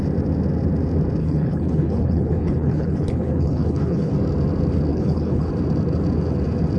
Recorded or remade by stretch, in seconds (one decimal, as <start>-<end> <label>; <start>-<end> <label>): 0.0-1.2 recorded; 1.2-4.1 remade; 4.1-4.9 recorded; 4.9-5.5 remade; 5.5-6.8 recorded